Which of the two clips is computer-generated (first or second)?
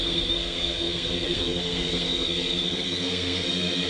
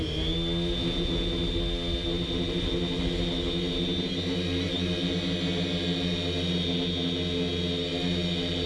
first